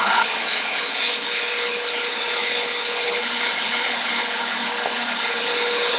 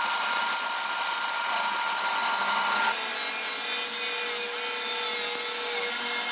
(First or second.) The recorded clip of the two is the second